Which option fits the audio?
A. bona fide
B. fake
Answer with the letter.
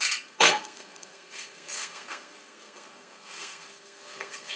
B